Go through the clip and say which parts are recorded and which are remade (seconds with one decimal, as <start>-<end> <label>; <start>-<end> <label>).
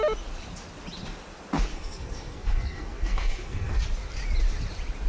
0.0-1.7 recorded; 1.7-3.8 remade; 3.8-5.1 recorded